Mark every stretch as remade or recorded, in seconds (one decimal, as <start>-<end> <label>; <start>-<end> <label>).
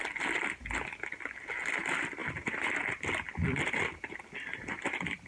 0.0-0.6 remade; 0.6-2.2 recorded; 2.2-5.3 remade